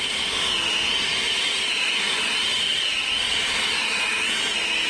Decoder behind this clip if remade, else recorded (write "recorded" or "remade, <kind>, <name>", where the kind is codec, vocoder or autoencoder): recorded